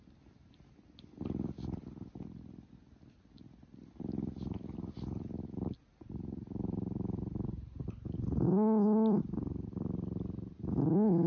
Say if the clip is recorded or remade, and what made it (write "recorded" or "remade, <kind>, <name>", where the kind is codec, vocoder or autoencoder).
recorded